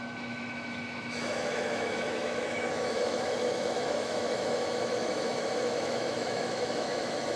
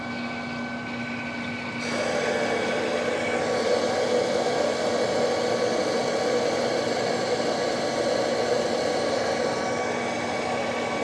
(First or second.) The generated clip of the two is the first